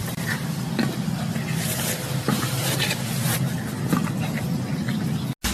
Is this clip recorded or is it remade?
recorded